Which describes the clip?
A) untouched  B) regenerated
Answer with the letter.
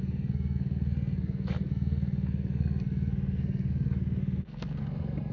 B